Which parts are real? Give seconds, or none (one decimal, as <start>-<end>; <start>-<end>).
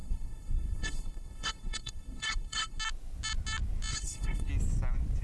2.8-3.9; 4.5-5.2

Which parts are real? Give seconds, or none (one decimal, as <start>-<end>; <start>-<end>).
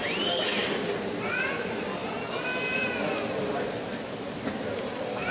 0.0-5.3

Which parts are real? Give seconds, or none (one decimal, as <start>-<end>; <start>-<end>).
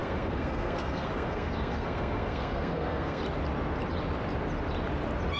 3.2-5.4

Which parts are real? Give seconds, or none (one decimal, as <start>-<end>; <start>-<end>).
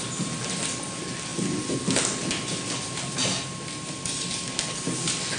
0.0-5.4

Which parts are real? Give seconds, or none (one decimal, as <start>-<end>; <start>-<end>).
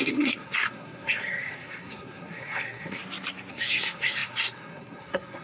3.0-3.5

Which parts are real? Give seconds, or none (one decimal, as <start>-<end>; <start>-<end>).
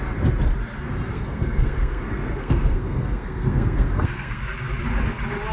0.0-1.1; 4.4-5.5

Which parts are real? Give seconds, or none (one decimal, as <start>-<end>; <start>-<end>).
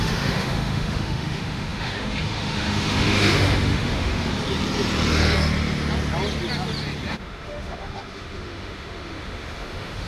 4.3-7.1